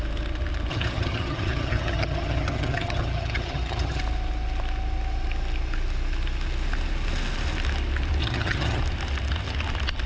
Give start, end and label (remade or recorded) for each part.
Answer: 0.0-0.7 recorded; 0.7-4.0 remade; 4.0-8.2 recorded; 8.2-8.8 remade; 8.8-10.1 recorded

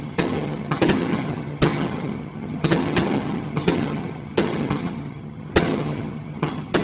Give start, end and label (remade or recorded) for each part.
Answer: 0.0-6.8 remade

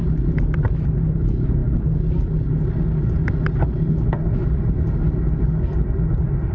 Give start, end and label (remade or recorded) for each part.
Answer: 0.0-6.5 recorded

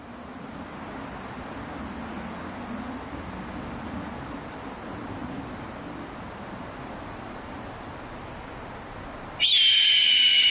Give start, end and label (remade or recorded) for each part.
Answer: 0.0-10.5 recorded

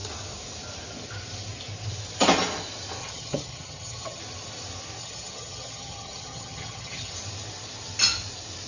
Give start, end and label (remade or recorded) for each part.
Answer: 0.0-3.0 recorded; 3.0-4.2 remade; 4.2-5.0 recorded; 5.0-7.1 remade; 7.1-8.7 recorded